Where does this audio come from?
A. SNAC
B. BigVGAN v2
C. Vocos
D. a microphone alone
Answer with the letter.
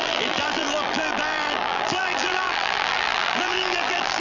B